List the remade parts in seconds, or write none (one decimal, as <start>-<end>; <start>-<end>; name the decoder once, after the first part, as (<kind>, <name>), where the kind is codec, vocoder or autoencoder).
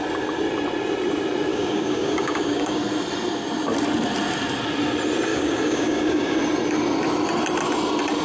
1.5-2.8 (codec, DAC); 5.3-6.4